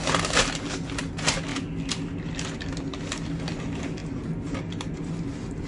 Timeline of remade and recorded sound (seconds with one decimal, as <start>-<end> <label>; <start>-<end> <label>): 0.0-5.7 recorded